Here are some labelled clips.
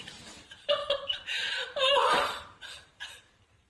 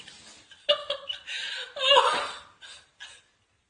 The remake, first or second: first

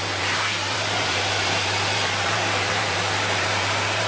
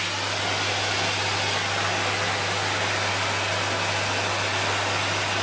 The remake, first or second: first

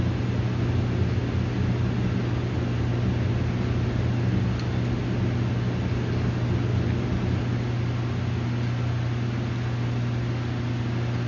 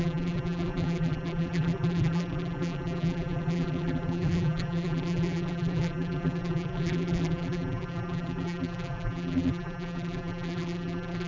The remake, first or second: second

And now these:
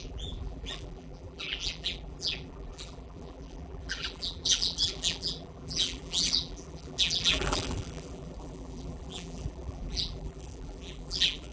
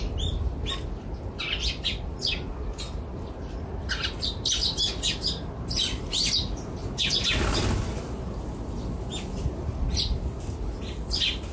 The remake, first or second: first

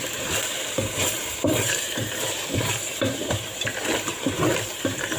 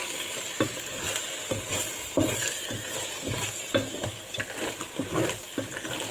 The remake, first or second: first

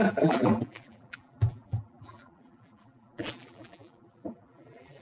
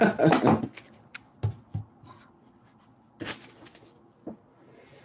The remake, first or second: first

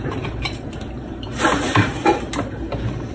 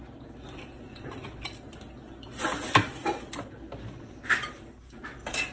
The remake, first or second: first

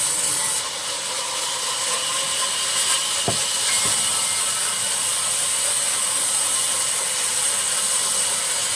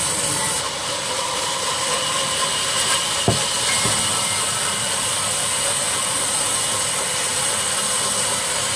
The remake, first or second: second